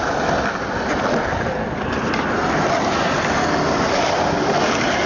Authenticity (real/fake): real